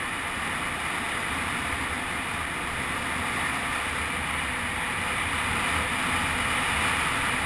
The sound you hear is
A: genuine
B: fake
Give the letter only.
A